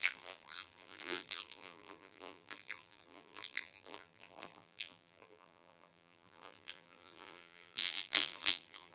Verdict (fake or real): fake